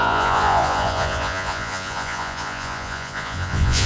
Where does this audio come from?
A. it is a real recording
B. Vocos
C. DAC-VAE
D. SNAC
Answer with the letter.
B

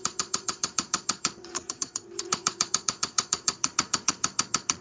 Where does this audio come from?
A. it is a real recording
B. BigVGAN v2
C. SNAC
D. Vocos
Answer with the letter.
D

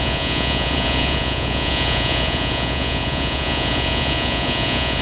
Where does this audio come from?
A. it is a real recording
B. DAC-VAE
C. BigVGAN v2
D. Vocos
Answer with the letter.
D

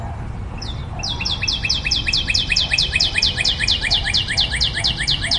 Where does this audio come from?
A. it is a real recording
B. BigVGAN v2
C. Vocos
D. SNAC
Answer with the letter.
A